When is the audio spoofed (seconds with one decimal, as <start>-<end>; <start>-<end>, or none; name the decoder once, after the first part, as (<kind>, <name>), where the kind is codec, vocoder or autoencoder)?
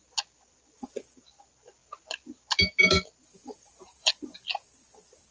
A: 3.3-4.1 (vocoder, BigVGAN v2)